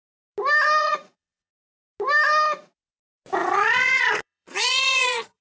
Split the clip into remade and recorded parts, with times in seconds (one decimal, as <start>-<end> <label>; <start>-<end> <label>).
0.0-0.8 recorded; 0.8-1.5 remade; 1.5-3.4 recorded; 3.4-5.4 remade